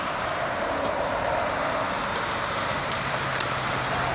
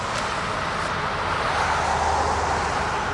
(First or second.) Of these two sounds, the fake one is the first